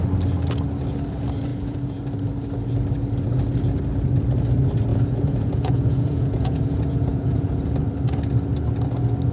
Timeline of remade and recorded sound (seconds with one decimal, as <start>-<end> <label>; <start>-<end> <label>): 0.0-1.5 recorded; 1.5-2.0 remade; 2.0-4.9 recorded; 4.9-7.7 remade; 7.7-9.3 recorded